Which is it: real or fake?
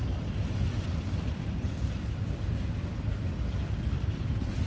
real